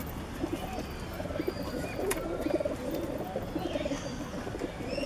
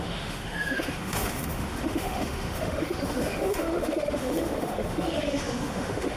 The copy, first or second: second